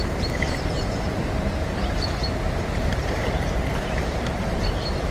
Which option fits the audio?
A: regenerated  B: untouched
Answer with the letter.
A